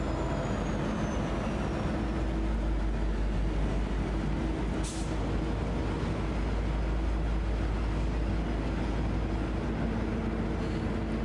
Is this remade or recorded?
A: recorded